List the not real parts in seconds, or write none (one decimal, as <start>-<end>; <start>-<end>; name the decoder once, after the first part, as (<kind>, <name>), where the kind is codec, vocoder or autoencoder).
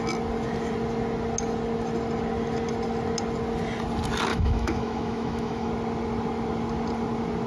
4.3-5.7 (autoencoder, DAC-VAE)